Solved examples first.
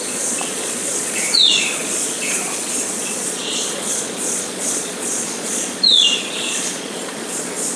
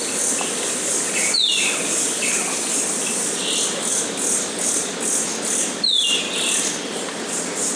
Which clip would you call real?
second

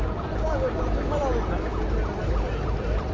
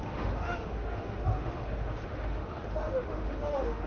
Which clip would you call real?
first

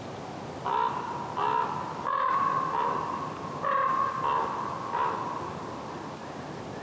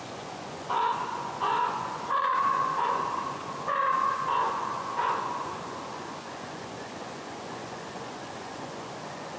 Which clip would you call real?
first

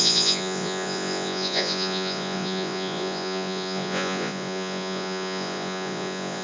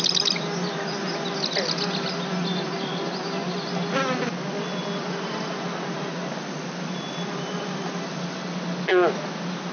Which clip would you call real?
second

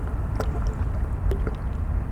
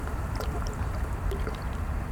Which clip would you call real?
first